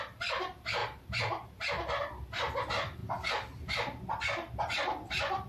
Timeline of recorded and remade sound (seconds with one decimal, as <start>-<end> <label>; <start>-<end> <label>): 0.0-0.8 remade; 0.8-2.0 recorded; 2.0-3.0 remade; 3.0-5.1 recorded; 5.1-5.5 remade